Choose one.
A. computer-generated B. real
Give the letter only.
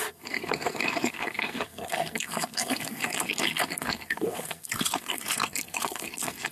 A